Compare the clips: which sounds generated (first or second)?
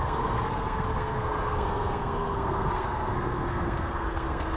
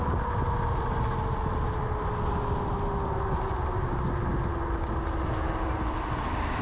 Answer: first